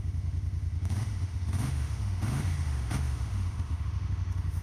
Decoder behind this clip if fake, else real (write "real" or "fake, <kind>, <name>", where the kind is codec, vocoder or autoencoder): fake, autoencoder, DAC-VAE